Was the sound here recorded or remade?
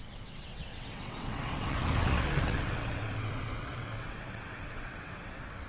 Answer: remade